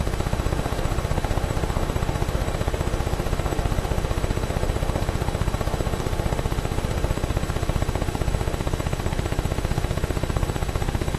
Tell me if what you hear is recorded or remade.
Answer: remade